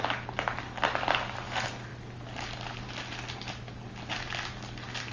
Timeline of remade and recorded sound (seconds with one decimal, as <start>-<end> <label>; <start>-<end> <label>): 0.0-5.1 recorded